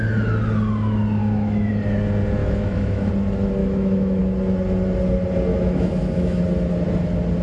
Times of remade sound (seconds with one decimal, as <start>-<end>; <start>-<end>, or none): 1.2-1.7; 2.4-3.1; 3.6-4.2; 5.5-6.4